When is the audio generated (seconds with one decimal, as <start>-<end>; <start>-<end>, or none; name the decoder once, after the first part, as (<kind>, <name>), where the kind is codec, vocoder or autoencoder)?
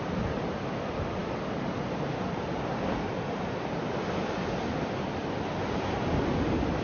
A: none